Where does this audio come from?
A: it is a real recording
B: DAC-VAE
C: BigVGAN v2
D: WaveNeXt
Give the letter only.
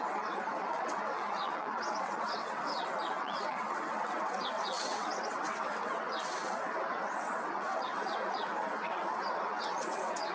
D